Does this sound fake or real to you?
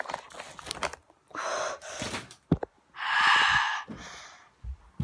real